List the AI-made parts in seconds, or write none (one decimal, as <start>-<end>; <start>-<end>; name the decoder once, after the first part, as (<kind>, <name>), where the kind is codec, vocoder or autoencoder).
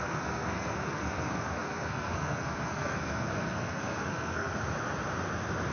0.0-4.5 (codec, SNAC)